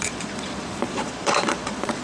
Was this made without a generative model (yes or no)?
no